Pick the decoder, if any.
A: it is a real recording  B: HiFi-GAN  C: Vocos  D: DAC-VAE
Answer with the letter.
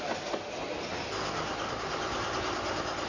A